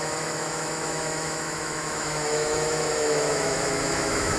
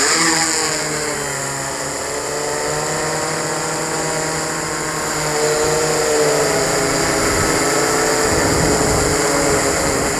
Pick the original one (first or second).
second